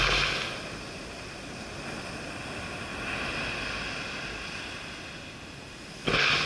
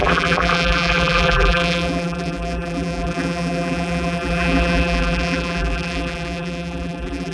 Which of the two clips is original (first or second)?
first